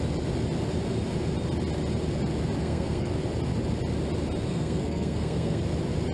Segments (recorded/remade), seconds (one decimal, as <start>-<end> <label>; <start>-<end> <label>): 0.0-2.6 recorded; 2.6-3.1 remade; 3.1-4.5 recorded; 4.5-5.6 remade; 5.6-6.1 recorded